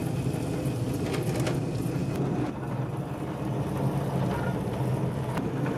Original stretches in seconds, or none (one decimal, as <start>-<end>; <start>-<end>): 0.0-5.8